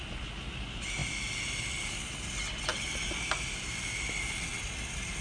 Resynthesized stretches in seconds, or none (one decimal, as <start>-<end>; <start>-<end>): none